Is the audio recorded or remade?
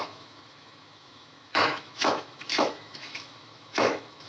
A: remade